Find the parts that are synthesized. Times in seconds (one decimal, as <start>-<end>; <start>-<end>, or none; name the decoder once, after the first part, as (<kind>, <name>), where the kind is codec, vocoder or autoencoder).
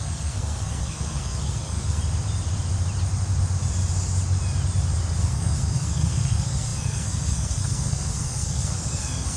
0.0-2.0 (codec, SNAC); 5.2-9.4